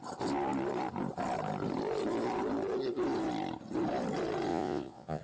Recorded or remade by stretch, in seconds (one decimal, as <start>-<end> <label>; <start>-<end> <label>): 0.0-4.5 recorded; 4.5-5.2 remade